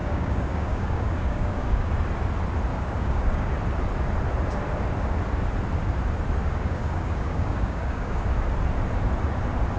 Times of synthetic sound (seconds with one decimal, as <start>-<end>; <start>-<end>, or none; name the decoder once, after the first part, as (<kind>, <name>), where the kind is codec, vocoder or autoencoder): 0.0-1.9 (codec, DAC); 2.7-3.5; 6.4-8.3